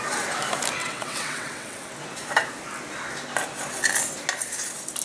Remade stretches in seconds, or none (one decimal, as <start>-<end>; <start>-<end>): 0.8-1.9